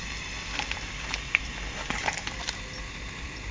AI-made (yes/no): yes